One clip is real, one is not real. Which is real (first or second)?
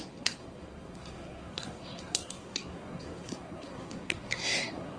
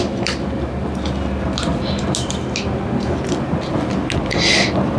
second